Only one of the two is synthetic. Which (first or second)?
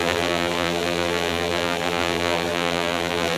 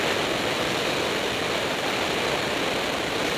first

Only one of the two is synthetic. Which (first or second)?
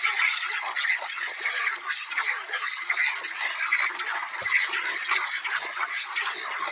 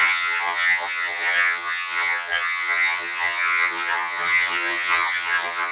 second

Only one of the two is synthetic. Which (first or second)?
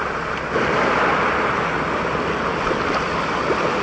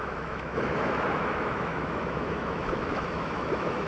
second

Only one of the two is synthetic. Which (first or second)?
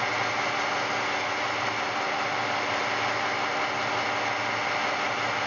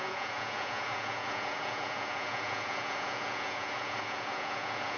second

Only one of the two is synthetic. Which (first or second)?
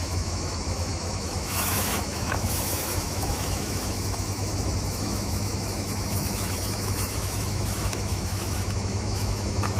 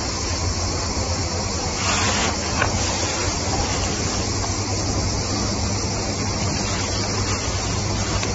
first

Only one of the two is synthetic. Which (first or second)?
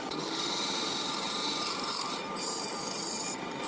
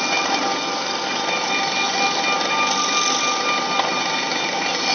first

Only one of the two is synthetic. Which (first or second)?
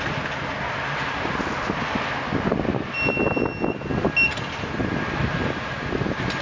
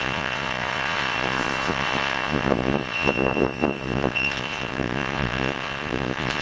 second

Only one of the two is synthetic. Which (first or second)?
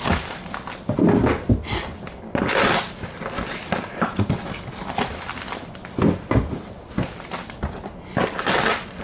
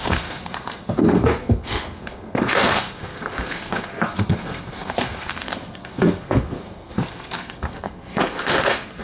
second